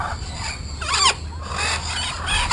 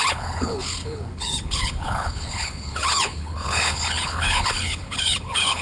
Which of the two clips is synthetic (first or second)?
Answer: second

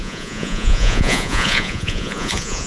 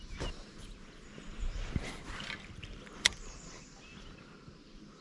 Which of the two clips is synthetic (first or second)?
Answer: first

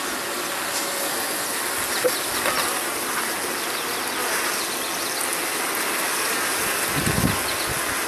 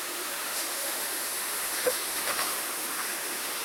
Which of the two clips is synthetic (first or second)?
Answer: second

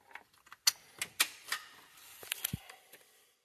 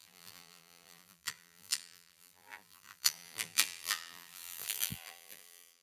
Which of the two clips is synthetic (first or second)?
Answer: second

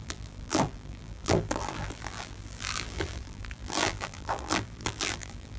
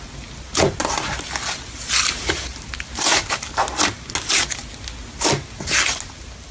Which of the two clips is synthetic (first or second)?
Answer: first